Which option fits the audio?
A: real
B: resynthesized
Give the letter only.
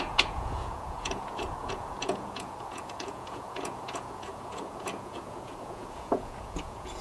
B